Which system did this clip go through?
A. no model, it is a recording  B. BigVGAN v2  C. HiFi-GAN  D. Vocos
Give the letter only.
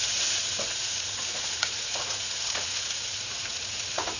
D